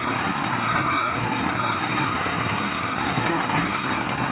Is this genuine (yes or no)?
no